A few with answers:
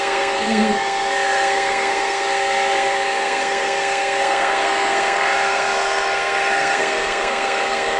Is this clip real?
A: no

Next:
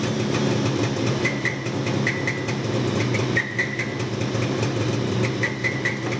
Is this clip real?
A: yes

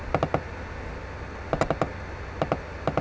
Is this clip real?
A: yes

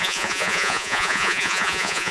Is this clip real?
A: no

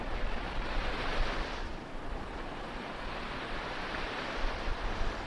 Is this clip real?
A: no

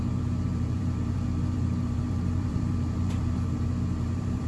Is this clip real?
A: no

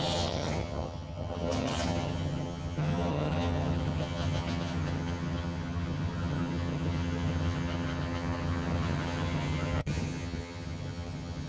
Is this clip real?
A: no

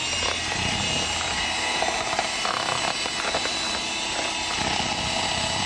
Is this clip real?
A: yes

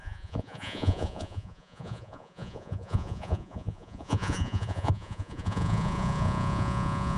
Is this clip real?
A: no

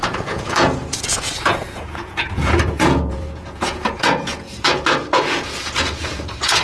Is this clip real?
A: no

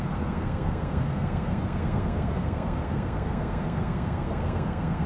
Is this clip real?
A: no